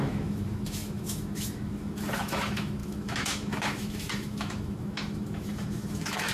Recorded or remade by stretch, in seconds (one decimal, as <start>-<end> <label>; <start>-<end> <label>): 0.0-6.3 remade